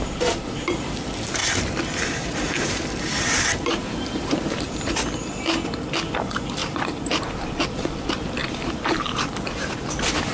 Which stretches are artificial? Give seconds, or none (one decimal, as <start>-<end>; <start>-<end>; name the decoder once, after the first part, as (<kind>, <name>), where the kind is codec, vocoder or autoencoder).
1.4-4.9 (vocoder, BigVGAN v2); 6.6-7.3; 8.4-9.3